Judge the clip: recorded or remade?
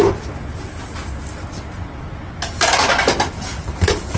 recorded